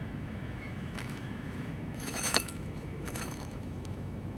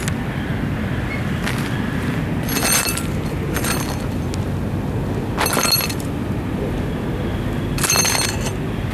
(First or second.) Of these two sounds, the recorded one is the second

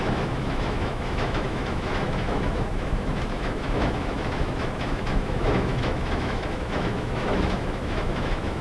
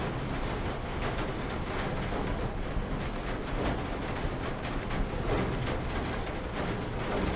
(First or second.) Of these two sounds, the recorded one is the second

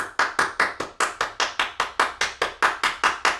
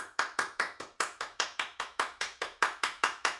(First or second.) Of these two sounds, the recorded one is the first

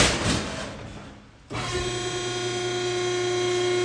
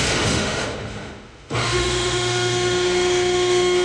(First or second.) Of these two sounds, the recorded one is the first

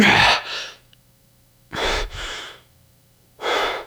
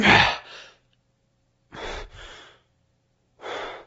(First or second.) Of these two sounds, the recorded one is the second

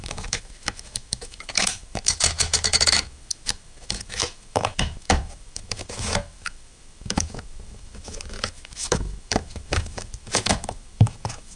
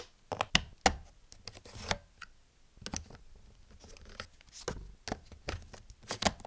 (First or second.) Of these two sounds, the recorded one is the second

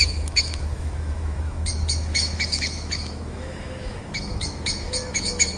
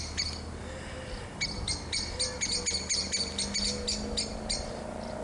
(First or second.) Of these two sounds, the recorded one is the second